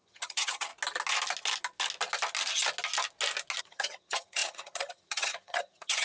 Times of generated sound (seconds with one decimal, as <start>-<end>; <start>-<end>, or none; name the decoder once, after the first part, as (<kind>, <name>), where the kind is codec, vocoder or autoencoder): 0.0-0.7 (vocoder, HiFi-GAN); 3.6-6.0